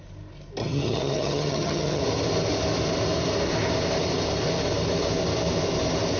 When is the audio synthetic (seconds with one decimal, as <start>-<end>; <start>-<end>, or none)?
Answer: 0.6-2.0